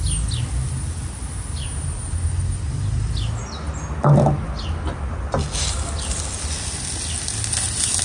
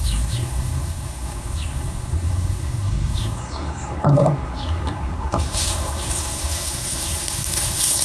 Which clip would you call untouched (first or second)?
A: first